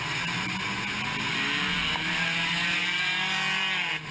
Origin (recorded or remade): recorded